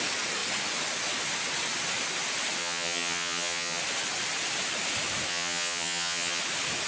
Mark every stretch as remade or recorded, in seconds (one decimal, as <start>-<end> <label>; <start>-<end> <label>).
0.0-2.6 recorded; 2.6-3.8 remade; 3.8-5.3 recorded; 5.3-6.4 remade; 6.4-6.9 recorded